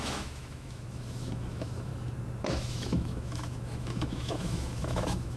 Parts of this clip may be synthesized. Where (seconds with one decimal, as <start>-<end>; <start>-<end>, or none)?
0.0-1.9; 2.4-5.4